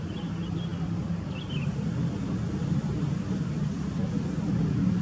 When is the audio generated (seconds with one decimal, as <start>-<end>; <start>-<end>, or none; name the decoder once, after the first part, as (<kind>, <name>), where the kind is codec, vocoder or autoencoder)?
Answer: none

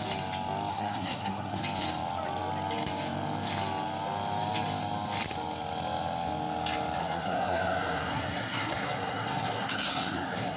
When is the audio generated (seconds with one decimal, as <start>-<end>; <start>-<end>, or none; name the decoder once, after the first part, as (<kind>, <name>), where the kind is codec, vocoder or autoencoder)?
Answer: 0.7-1.6 (codec, SNAC); 7.0-10.6

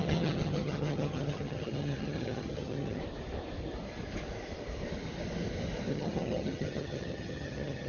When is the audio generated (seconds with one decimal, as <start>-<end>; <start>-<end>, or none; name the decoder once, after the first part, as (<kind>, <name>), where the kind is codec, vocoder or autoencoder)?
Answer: 0.0-3.0 (vocoder, HiFi-GAN); 5.9-7.9